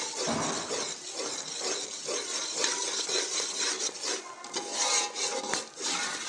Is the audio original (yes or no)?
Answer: yes